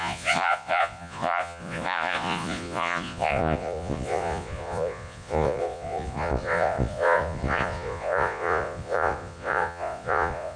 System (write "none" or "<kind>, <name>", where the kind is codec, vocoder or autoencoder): vocoder, Vocos